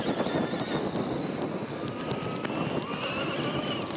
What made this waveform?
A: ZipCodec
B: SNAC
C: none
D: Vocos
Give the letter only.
C